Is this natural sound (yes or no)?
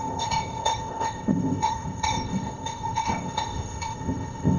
no